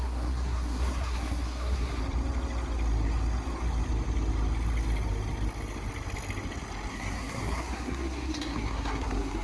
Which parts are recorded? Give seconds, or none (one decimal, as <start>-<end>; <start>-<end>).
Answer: 2.0-6.9